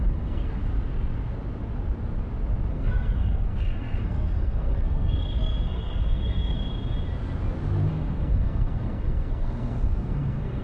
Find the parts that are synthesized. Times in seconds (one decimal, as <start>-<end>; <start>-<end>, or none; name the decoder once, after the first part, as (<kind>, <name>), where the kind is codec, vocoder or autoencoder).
0.0-0.6 (codec, SNAC); 2.7-6.7; 7.9-10.6

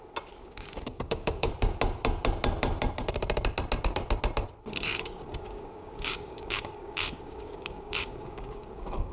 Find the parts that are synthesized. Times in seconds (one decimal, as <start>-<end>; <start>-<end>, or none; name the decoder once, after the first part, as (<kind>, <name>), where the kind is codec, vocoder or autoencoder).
0.4-1.5 (codec, DAC); 4.9-9.1

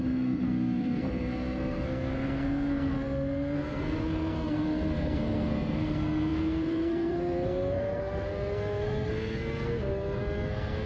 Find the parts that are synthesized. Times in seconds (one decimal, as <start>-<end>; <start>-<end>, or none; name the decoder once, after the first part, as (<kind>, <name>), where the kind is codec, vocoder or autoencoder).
0.0-10.9 (codec, SNAC)

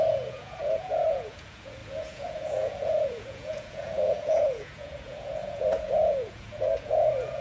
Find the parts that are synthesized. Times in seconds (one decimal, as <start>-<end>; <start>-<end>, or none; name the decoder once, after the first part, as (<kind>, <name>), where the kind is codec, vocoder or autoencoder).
0.0-7.4 (vocoder, Vocos)

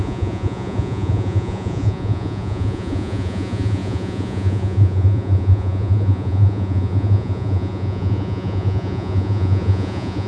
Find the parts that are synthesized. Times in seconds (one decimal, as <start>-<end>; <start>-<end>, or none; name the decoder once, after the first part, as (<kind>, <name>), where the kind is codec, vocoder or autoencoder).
0.0-10.3 (vocoder, Vocos)